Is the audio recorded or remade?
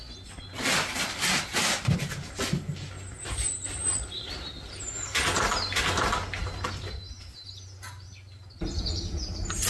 recorded